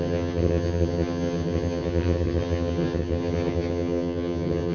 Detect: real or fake fake